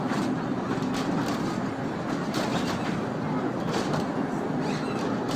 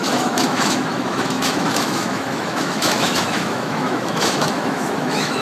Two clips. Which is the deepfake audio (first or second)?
second